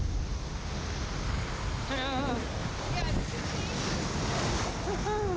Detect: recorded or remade recorded